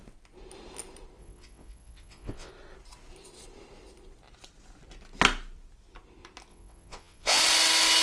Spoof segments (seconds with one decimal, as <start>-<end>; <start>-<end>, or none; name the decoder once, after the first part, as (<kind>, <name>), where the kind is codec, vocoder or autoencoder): 1.2-2.5 (vocoder, WaveNeXt); 6.5-7.4